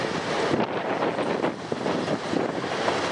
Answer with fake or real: real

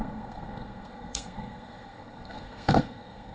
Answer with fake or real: fake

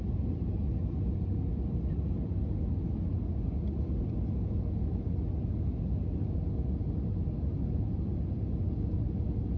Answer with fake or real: real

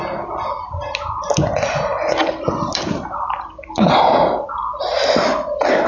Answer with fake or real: real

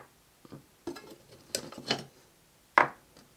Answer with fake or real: real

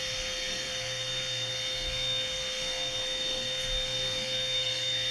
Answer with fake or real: fake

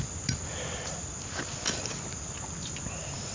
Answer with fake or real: real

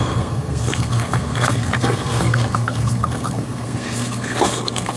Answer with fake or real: fake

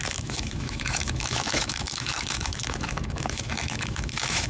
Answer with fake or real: fake